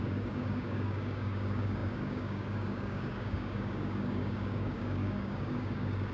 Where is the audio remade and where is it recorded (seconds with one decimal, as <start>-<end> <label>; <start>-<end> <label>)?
0.0-6.1 remade